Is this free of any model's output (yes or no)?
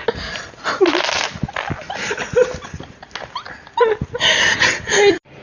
yes